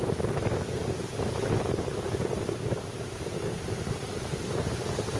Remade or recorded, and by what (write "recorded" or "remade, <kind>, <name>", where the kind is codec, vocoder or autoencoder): remade, vocoder, BigVGAN v2